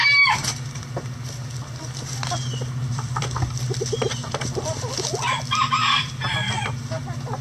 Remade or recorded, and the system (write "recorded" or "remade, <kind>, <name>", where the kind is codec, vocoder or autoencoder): remade, vocoder, BigVGAN v2